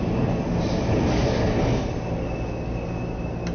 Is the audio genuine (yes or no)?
yes